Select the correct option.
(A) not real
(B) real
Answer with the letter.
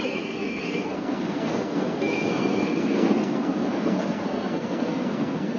A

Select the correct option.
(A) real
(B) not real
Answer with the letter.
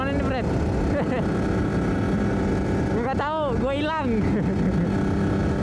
A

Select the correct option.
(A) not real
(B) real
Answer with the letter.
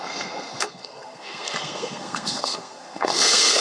A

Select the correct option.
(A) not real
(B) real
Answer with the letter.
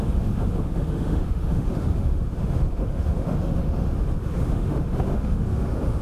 A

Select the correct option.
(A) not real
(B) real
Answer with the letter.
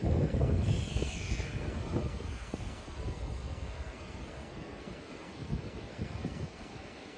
A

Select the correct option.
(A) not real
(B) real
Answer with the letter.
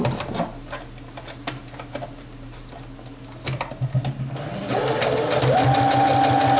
B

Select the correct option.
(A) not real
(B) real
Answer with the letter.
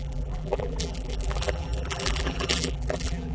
A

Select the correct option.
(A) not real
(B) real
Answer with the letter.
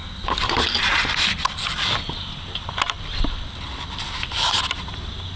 B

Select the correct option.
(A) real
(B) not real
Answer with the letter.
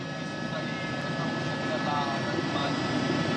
A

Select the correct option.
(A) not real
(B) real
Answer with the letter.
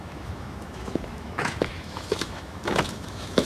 A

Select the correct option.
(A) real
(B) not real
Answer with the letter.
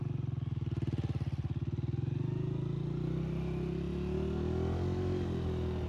A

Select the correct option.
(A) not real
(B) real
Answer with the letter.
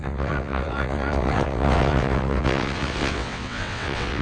A